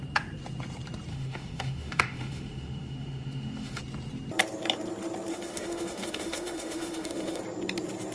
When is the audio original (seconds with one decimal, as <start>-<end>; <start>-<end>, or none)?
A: 0.0-1.1; 3.8-5.3; 7.4-8.1